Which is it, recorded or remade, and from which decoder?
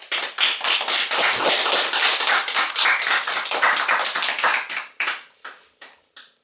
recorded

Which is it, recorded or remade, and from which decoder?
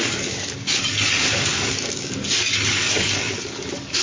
remade, codec, DAC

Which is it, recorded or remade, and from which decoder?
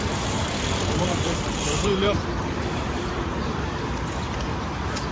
remade, vocoder, BigVGAN v2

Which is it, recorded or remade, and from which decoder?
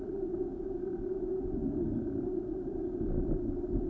recorded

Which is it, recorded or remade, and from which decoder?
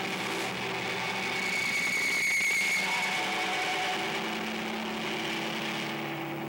recorded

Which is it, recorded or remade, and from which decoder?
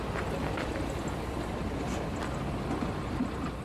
remade, vocoder, BigVGAN v2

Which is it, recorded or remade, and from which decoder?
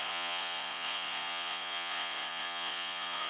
remade, vocoder, Vocos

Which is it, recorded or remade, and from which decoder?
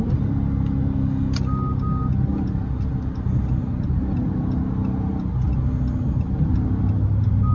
recorded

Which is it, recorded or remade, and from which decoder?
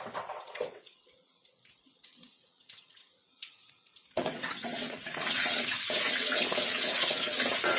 remade, vocoder, WaveNeXt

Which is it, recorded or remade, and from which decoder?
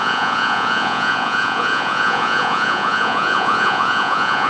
remade, vocoder, Vocos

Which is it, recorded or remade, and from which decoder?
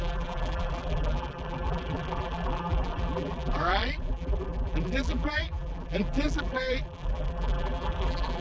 remade, vocoder, BigVGAN v2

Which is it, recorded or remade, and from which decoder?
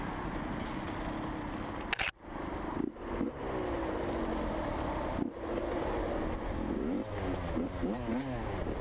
recorded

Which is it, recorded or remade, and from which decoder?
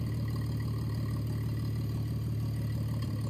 recorded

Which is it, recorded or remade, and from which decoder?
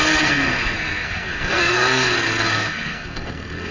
remade, codec, SNAC